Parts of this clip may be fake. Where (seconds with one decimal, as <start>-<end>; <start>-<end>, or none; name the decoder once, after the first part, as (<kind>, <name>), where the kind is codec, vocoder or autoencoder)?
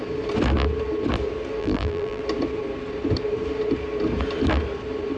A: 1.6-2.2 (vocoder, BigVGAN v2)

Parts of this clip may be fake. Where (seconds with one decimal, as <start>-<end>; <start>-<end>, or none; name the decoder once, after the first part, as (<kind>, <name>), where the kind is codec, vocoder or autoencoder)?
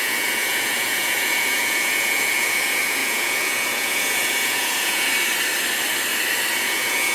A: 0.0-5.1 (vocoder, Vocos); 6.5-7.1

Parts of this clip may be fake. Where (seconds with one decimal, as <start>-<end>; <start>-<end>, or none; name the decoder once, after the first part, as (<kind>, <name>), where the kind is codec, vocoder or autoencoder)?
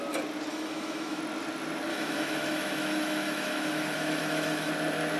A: 0.5-1.2 (autoencoder, DAC-VAE); 1.9-4.7